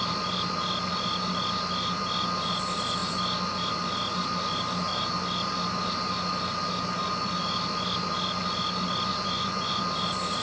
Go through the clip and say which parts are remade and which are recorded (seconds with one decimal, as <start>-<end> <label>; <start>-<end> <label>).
0.0-9.1 recorded; 9.1-9.8 remade; 9.8-10.4 recorded